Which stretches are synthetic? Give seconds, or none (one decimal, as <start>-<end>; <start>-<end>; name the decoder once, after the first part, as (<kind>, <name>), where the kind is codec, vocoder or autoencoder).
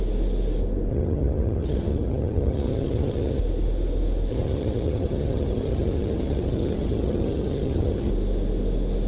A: 0.9-3.4 (vocoder, HiFi-GAN); 4.3-8.1